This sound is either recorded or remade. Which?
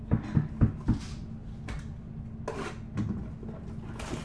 recorded